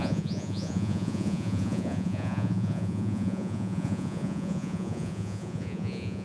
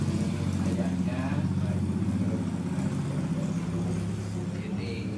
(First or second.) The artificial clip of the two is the first